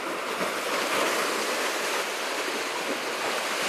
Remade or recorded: recorded